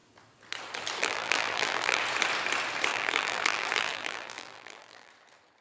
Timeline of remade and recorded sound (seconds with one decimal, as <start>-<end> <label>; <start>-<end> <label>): 0.0-1.0 recorded; 1.0-2.0 remade; 2.0-2.9 recorded; 2.9-5.1 remade; 5.1-5.6 recorded